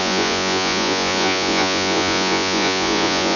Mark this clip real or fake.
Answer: fake